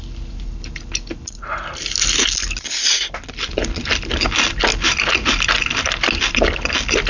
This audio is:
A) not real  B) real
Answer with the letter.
B